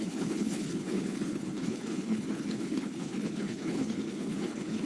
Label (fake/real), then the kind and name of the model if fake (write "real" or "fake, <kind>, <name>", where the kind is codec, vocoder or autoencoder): fake, codec, HILCodec